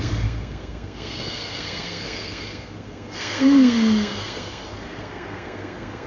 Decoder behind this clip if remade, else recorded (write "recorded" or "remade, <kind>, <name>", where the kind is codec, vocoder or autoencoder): remade, codec, SNAC